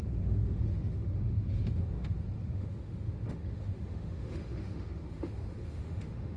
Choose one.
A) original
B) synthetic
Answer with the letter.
B